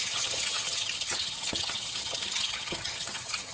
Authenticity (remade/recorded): remade